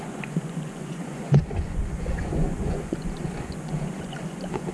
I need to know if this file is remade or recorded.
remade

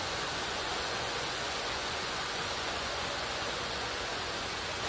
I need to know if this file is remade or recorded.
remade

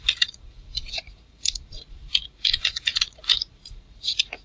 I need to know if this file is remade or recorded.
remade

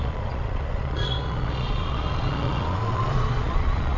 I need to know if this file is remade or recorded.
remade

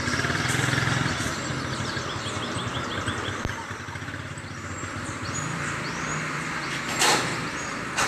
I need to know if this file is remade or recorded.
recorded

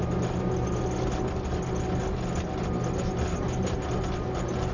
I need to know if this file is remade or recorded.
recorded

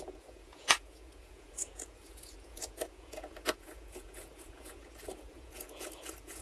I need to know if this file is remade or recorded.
remade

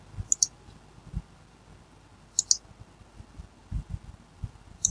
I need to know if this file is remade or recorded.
recorded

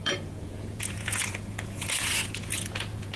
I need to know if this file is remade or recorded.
remade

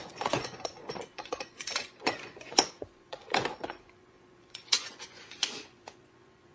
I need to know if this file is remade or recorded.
remade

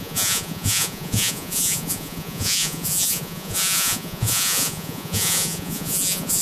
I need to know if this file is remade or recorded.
remade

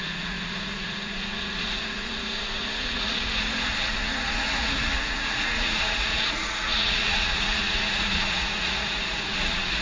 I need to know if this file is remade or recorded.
remade